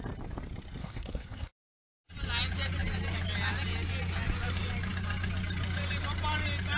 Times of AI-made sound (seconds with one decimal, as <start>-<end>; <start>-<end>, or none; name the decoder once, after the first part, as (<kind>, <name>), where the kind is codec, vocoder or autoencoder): 0.8-2.1 (codec, SNAC)